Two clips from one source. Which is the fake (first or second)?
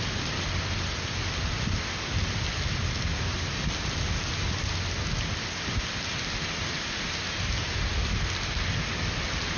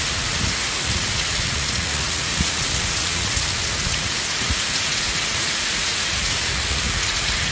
second